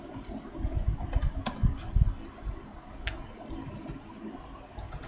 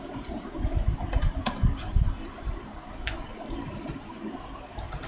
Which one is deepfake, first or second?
second